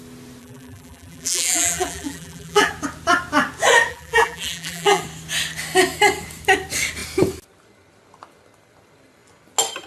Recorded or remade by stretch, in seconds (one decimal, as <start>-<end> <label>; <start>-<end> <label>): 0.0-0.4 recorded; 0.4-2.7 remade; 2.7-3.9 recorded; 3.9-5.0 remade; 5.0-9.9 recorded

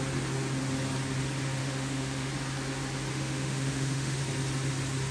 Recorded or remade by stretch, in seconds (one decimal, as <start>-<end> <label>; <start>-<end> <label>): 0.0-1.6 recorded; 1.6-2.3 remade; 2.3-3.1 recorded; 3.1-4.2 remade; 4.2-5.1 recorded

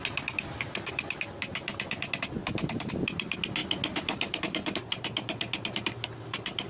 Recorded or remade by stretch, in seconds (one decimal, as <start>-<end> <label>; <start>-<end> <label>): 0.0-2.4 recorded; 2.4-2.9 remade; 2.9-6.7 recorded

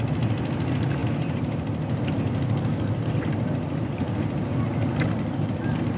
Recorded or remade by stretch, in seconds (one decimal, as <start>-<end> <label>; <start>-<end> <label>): 0.0-6.0 recorded

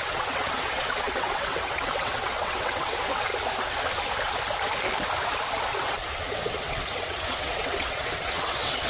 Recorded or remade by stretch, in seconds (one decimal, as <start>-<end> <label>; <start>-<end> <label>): 0.0-3.3 remade; 3.3-5.8 recorded; 5.8-8.9 remade

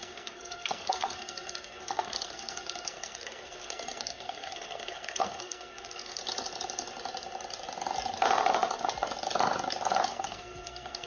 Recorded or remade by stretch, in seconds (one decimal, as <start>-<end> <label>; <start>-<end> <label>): 0.0-6.2 remade; 6.2-10.1 recorded; 10.1-11.1 remade

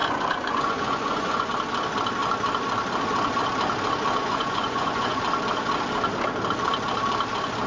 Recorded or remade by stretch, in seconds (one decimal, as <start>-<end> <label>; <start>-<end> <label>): 0.0-1.5 remade; 1.5-4.2 recorded; 4.2-5.2 remade; 5.2-7.7 recorded